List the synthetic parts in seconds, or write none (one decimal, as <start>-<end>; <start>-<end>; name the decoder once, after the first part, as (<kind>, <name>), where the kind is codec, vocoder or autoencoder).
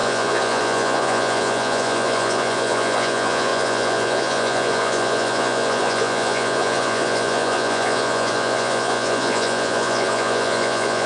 0.0-11.1 (vocoder, Vocos)